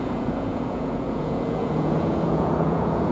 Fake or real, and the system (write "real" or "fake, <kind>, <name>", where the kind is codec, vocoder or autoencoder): fake, vocoder, Vocos